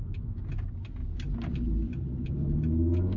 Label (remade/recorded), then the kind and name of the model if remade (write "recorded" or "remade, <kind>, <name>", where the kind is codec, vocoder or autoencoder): recorded